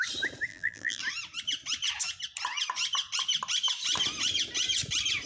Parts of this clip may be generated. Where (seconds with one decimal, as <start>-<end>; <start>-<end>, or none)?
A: 0.5-1.0

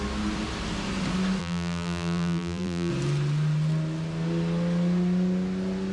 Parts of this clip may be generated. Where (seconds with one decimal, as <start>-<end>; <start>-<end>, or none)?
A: 1.4-2.9

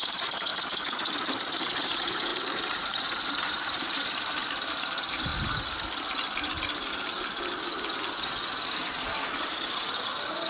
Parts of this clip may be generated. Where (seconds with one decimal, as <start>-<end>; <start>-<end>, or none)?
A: 0.0-0.5; 1.9-5.3; 9.5-10.5

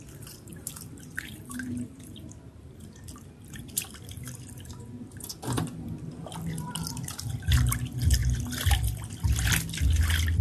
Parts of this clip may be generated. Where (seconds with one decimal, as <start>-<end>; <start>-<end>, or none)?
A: 0.5-4.3

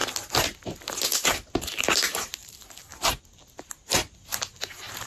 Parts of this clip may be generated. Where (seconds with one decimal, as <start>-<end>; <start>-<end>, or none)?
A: 1.2-2.5

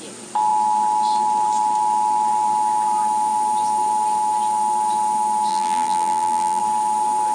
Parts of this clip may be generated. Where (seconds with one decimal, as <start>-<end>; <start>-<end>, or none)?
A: 5.5-6.6

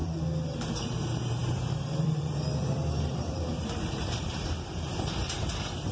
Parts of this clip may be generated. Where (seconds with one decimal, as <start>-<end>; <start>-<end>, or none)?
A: 0.7-5.9

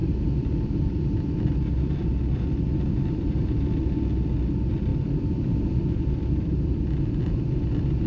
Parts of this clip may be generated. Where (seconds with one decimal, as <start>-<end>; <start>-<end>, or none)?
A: 0.0-4.1; 4.9-7.2